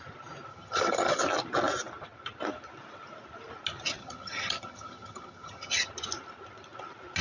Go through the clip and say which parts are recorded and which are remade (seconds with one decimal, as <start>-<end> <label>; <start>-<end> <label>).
0.0-0.5 recorded; 0.5-1.2 remade; 1.2-4.0 recorded; 4.0-5.9 remade; 5.9-7.2 recorded